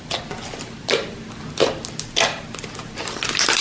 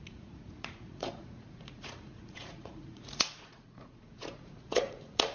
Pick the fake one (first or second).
second